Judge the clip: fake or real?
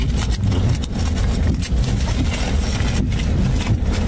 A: real